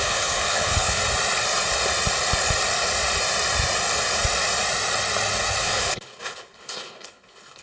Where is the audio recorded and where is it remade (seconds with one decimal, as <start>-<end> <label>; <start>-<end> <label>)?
0.0-1.0 remade; 1.0-5.6 recorded; 5.6-7.6 remade